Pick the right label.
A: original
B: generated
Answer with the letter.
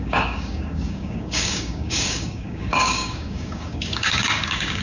B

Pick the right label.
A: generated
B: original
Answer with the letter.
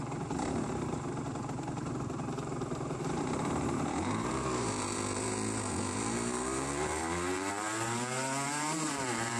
A